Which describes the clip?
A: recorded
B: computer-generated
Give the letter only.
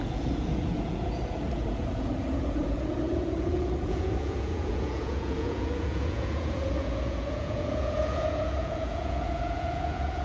B